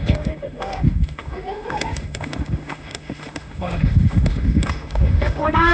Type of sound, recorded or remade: remade